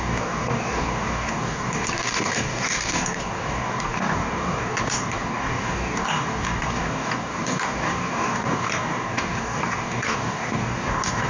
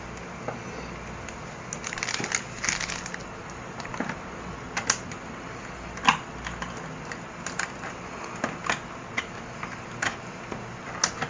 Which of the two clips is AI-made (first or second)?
first